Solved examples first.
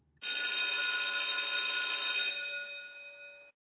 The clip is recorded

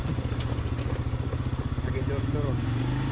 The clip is recorded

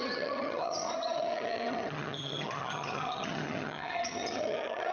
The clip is remade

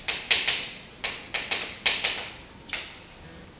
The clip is recorded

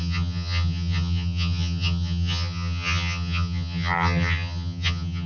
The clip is remade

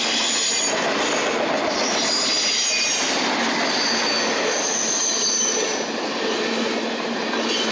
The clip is recorded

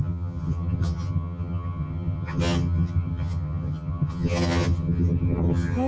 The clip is remade